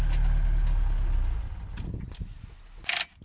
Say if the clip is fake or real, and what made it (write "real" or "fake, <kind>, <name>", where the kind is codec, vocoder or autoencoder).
real